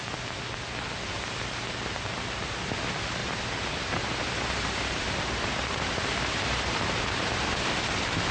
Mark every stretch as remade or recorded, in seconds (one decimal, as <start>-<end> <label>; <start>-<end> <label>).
0.0-3.2 recorded; 3.2-7.7 remade; 7.7-8.3 recorded